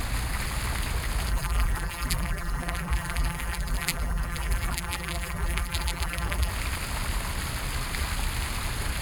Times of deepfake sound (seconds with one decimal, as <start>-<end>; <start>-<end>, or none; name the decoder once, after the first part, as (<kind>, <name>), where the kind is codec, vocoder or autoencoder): 1.3-6.5 (vocoder, BigVGAN v2)